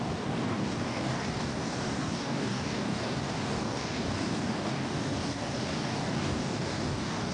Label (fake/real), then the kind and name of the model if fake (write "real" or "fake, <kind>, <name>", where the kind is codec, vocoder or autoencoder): fake, codec, DAC